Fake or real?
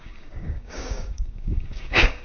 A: fake